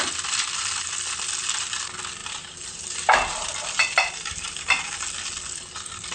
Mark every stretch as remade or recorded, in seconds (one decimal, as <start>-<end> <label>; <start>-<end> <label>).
0.0-2.2 recorded; 2.2-4.9 remade; 4.9-6.1 recorded